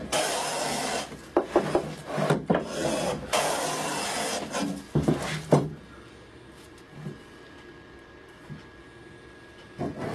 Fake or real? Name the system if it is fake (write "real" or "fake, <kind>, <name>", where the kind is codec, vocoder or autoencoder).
real